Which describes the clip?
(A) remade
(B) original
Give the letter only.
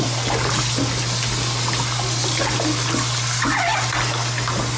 B